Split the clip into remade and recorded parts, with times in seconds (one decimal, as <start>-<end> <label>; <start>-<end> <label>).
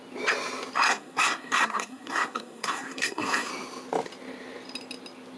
0.0-0.9 recorded; 0.9-3.5 remade; 3.5-5.4 recorded